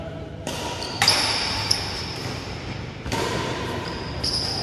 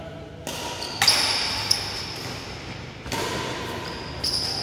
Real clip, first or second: second